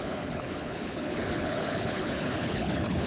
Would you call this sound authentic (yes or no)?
no